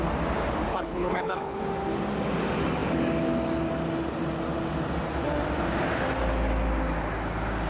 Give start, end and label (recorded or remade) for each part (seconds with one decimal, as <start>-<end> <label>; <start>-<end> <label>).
0.0-0.7 recorded; 0.7-1.6 remade; 1.6-7.7 recorded